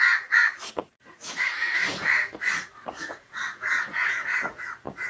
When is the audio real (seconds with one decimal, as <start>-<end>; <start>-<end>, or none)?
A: none